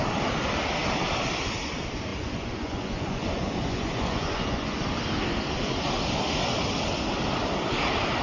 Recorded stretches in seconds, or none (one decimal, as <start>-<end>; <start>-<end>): 0.0-2.1; 4.8-8.2